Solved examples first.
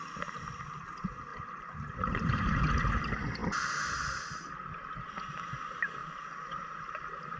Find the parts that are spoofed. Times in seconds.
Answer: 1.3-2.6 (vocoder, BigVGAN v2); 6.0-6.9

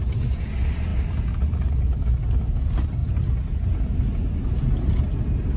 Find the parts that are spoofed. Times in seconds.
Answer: none

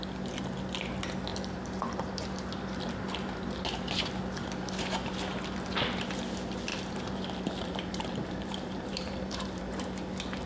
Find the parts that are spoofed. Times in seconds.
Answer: 1.3-3.6 (vocoder, BigVGAN v2); 6.7-9.6

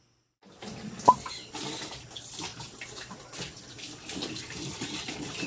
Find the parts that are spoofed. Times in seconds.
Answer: none

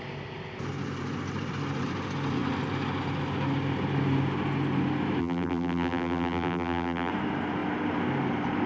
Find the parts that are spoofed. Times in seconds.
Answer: 5.2-7.1 (vocoder, BigVGAN v2)

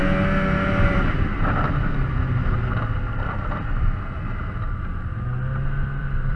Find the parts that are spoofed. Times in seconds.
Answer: 0.7-2.2 (vocoder, BigVGAN v2); 6.0-6.4

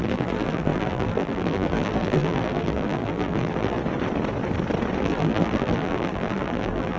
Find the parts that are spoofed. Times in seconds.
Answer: 0.0-3.8 (vocoder, BigVGAN v2); 5.0-7.0